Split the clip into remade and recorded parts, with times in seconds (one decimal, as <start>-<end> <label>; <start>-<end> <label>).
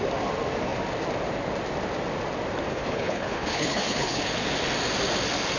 0.0-2.7 recorded; 2.7-4.2 remade; 4.2-5.6 recorded